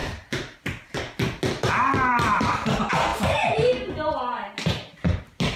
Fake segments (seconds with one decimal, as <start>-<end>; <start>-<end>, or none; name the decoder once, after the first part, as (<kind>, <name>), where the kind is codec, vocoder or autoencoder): 2.1-2.7 (vocoder, BigVGAN v2)

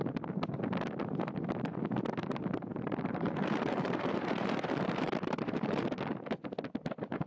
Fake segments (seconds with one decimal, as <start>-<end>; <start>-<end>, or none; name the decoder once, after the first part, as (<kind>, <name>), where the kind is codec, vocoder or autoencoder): 2.2-5.8 (vocoder, BigVGAN v2)